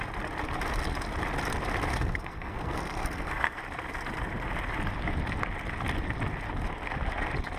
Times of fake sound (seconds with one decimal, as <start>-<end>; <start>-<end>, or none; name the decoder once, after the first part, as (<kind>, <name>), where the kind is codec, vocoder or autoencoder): 1.9-3.6 (codec, SNAC)